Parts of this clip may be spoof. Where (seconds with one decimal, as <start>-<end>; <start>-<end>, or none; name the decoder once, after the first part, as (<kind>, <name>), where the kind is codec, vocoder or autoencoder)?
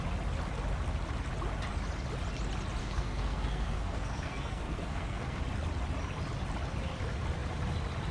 2.8-5.4 (codec, SNAC)